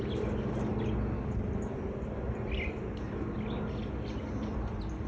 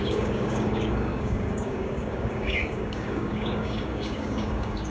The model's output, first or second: second